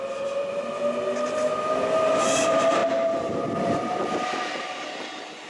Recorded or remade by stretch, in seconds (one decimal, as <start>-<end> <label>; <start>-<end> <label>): 0.0-5.5 recorded